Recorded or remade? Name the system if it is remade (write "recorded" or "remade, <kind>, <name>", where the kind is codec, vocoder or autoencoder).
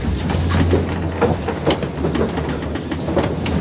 recorded